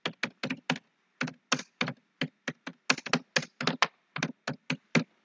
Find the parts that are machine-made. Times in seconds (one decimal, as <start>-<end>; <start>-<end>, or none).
none